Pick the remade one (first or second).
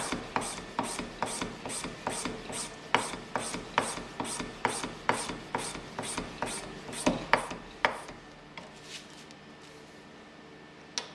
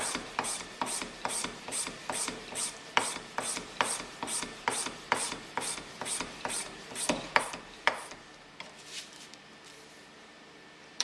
second